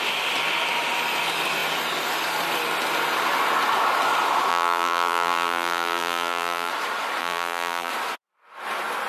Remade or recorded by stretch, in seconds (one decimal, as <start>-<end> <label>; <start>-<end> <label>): 0.0-4.5 recorded; 4.5-6.7 remade; 6.7-7.2 recorded; 7.2-7.9 remade; 7.9-9.1 recorded